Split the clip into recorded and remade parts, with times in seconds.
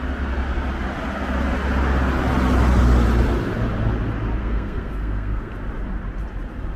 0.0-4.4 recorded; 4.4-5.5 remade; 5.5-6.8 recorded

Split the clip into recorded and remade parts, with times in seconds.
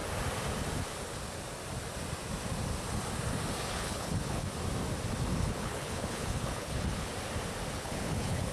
0.0-3.7 recorded; 3.7-4.5 remade; 4.5-5.4 recorded; 5.4-7.1 remade; 7.1-7.7 recorded; 7.7-8.5 remade